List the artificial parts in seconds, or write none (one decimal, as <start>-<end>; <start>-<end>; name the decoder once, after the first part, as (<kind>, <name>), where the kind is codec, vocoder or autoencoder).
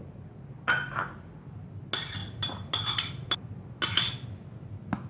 none